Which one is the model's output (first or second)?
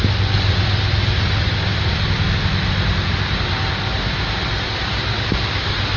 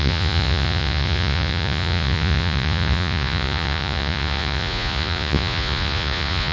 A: second